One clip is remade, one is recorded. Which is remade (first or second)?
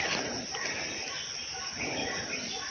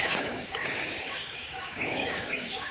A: second